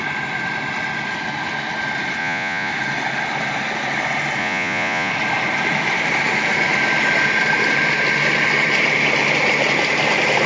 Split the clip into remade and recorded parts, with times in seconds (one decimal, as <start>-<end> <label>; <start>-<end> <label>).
0.0-2.2 recorded; 2.2-2.7 remade; 2.7-4.4 recorded; 4.4-5.1 remade; 5.1-10.5 recorded